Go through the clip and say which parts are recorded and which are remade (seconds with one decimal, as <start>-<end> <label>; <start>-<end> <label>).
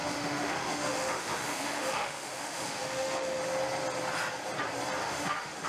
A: 0.0-3.4 remade; 3.4-5.0 recorded; 5.0-5.7 remade